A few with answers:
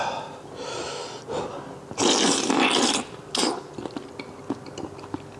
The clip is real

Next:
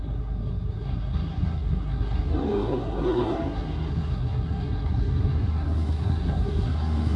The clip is fake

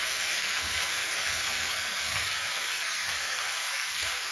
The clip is fake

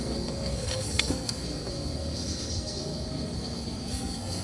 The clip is fake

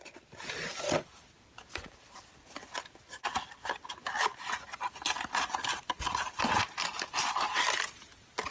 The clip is real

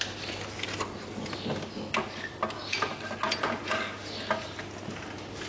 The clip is real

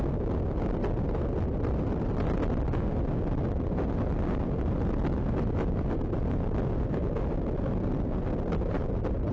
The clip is real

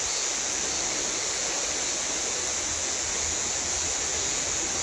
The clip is real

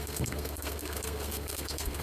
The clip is fake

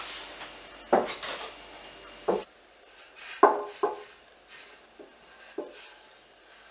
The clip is real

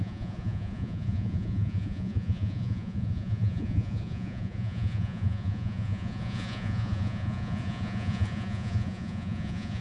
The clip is fake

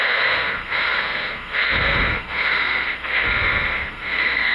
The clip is fake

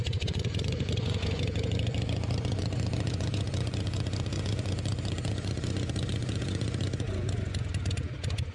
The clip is fake